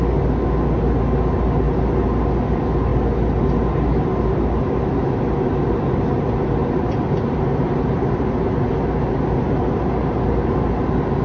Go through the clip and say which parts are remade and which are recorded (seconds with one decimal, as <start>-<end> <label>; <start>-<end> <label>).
0.0-11.2 recorded